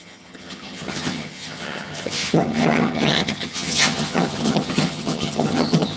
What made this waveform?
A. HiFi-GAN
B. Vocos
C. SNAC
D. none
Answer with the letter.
A